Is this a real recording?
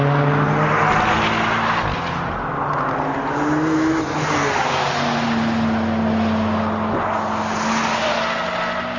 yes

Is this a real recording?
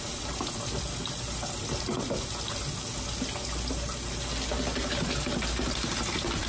yes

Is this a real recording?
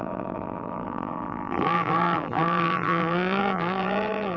no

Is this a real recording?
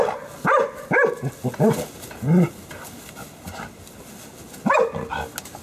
yes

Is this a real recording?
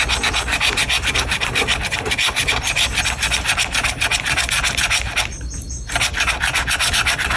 yes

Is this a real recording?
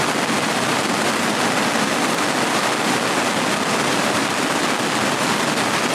yes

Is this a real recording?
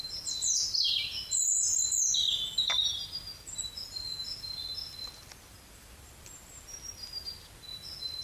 yes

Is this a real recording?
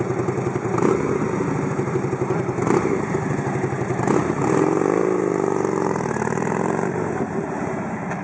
no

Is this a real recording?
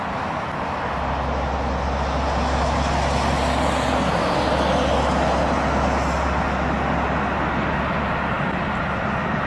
yes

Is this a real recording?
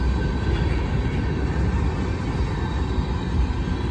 yes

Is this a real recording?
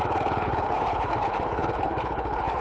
no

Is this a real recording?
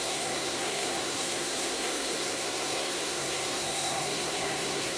no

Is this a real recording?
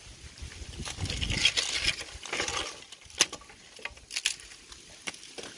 yes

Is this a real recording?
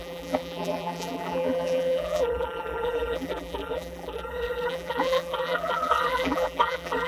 no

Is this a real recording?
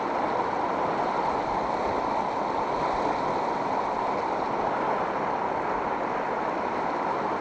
yes